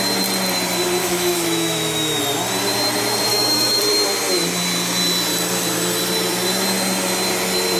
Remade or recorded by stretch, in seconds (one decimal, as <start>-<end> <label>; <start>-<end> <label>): 0.0-1.0 recorded; 1.0-2.2 remade; 2.2-3.3 recorded; 3.3-3.8 remade; 3.8-7.8 recorded